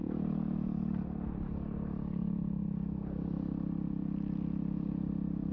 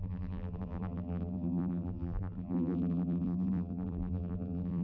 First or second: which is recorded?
first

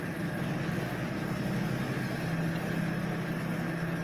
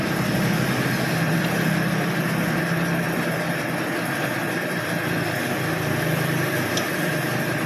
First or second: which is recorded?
first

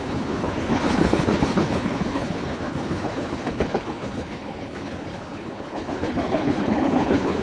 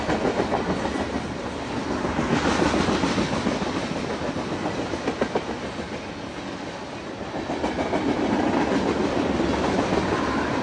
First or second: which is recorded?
second